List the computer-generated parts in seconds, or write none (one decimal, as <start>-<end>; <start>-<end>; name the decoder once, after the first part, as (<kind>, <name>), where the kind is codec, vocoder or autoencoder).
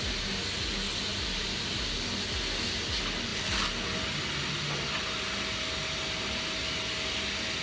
none